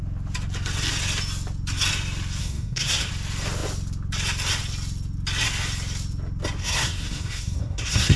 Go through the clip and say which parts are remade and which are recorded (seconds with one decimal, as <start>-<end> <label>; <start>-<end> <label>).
0.0-2.4 recorded; 2.4-3.1 remade; 3.1-6.6 recorded; 6.6-8.2 remade

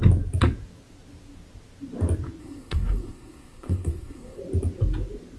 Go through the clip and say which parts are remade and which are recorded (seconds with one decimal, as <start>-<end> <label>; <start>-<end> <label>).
0.0-2.4 recorded; 2.4-4.4 remade; 4.4-5.4 recorded

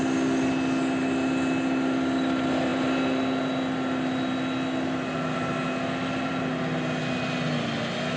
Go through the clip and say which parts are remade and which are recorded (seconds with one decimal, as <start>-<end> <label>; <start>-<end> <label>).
0.0-8.2 recorded

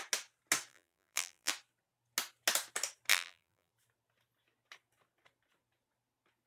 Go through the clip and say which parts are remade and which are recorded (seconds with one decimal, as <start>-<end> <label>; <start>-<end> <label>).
0.0-0.7 recorded; 0.7-1.5 remade; 1.5-3.1 recorded; 3.1-3.7 remade; 3.7-6.5 recorded

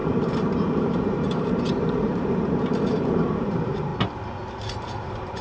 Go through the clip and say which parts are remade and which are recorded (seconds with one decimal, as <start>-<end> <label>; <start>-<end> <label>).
0.0-3.9 remade; 3.9-4.7 recorded; 4.7-5.4 remade

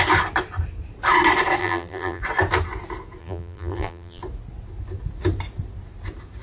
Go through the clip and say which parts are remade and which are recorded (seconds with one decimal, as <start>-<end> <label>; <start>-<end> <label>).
0.0-1.6 recorded; 1.6-2.2 remade; 2.2-3.2 recorded; 3.2-4.2 remade; 4.2-6.4 recorded

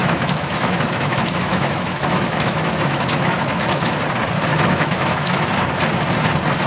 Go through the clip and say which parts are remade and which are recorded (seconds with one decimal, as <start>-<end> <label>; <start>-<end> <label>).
0.0-4.0 remade; 4.0-4.5 recorded; 4.5-5.6 remade; 5.6-6.7 recorded